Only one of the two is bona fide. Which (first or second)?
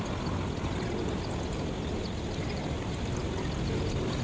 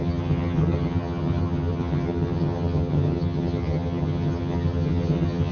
first